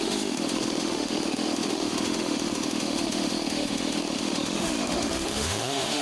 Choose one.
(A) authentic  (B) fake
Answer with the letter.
B